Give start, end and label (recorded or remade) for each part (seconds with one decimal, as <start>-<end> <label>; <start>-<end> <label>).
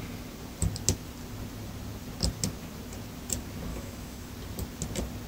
0.0-3.7 recorded; 3.7-4.3 remade; 4.3-5.3 recorded